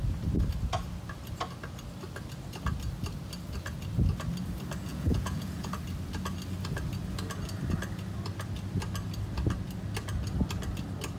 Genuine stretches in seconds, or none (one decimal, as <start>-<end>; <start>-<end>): 0.0-4.9; 5.7-11.2